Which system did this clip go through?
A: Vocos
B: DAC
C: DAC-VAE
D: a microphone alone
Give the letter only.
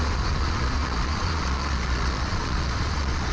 A